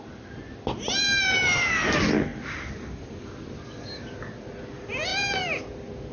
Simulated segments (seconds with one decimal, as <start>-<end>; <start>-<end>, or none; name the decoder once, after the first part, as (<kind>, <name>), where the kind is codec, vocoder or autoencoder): 5.1-6.1 (vocoder, BigVGAN v2)